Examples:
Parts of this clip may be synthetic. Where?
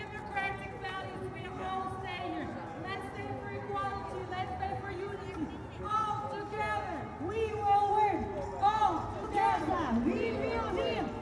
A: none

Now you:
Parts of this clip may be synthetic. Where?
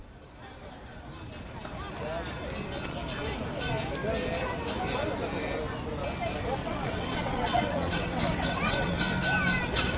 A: 6.6-9.0 (vocoder, WaveNeXt)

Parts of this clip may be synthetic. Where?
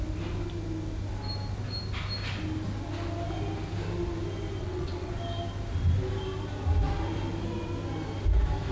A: 4.6-5.1 (vocoder, WaveNeXt)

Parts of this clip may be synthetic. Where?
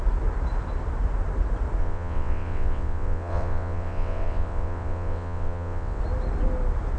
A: 1.8-6.0 (vocoder, WaveNeXt)